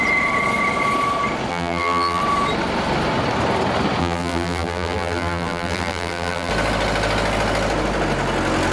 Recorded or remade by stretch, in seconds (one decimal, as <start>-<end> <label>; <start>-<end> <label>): 0.0-1.5 recorded; 1.5-2.2 remade; 2.2-4.0 recorded; 4.0-6.5 remade; 6.5-8.7 recorded